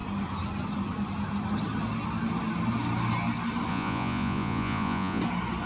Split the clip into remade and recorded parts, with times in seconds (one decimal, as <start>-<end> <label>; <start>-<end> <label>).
0.0-3.7 recorded; 3.7-5.2 remade; 5.2-5.7 recorded